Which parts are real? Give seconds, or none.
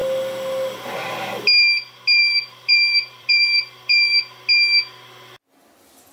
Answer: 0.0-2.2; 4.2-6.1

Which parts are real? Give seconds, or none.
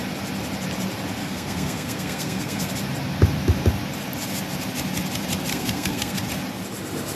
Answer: 0.0-1.2; 2.7-5.5; 6.2-7.2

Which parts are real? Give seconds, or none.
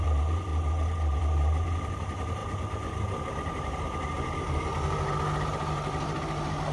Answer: 0.5-1.2; 4.7-6.7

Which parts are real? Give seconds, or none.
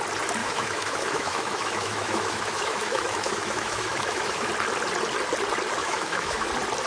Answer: 0.0-0.4; 4.5-5.8; 6.5-6.9